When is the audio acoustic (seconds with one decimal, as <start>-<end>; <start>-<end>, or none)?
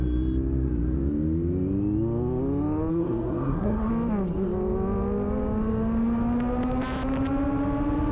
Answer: 0.0-2.9; 3.9-8.1